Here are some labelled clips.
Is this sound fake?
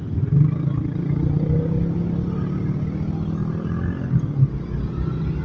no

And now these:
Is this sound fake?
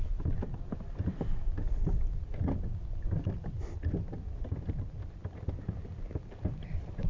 yes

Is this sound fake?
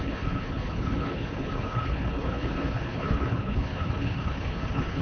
yes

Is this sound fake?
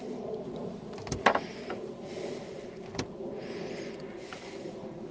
no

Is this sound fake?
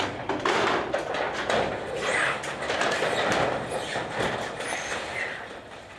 no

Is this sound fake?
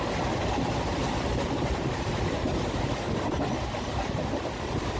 no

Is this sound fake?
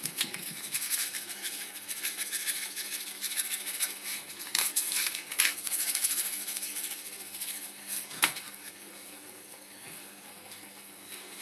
yes